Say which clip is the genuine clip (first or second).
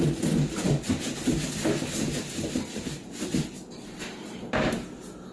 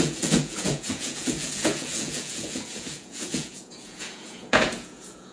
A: first